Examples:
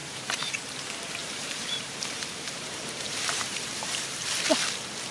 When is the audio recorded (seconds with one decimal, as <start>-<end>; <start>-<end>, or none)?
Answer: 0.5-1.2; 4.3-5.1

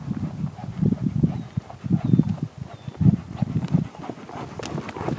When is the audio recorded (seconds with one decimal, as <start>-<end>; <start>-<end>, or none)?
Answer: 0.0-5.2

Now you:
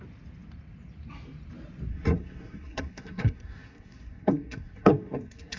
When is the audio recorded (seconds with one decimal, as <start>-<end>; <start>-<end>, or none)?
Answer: 0.0-1.9

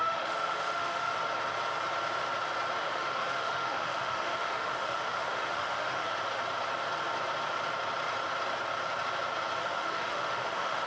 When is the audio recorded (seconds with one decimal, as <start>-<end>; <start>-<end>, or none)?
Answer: 1.1-2.8; 6.1-9.6

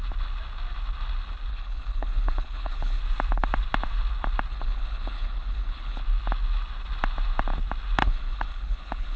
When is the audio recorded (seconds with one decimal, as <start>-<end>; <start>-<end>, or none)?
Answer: 0.0-1.5; 3.0-4.5; 6.0-8.0

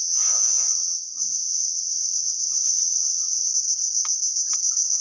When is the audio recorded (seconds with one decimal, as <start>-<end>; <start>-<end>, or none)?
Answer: 3.5-5.0